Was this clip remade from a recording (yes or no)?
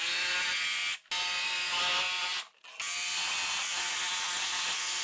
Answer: no